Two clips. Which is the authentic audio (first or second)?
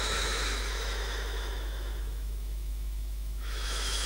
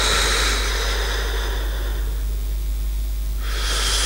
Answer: second